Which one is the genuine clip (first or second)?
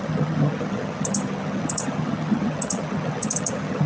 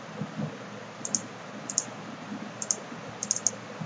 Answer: second